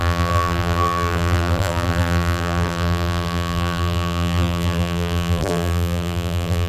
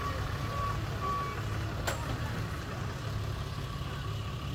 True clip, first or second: second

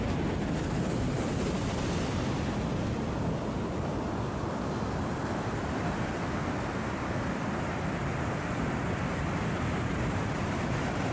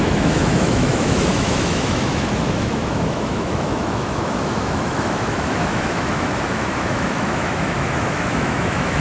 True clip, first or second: first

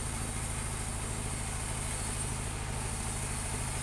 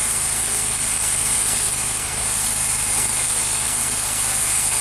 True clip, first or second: first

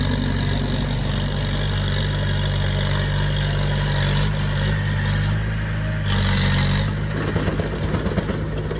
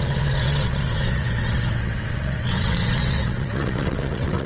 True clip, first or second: first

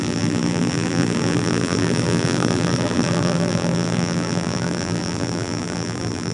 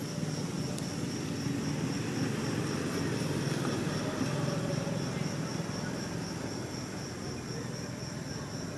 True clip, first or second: second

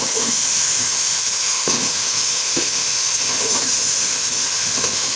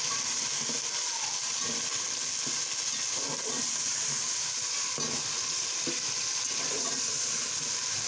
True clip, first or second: second